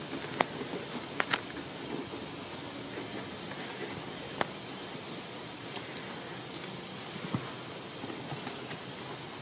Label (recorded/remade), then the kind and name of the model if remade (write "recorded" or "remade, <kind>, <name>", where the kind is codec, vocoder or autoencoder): recorded